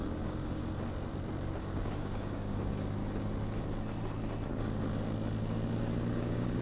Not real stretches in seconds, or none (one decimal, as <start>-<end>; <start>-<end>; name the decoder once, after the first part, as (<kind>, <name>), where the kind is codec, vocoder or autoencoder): 0.0-0.6 (codec, DAC); 1.6-3.0; 6.1-6.6